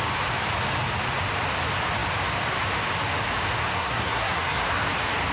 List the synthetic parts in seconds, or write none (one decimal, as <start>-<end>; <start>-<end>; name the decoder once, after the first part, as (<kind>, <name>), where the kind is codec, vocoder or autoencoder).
3.7-4.6 (codec, SNAC)